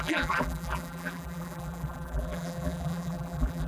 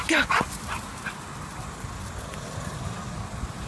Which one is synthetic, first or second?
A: first